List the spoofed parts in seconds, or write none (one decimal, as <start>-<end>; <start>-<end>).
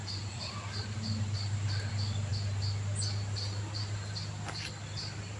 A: 0.0-2.3